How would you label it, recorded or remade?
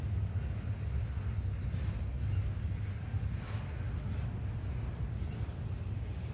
recorded